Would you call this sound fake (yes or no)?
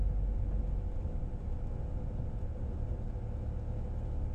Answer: no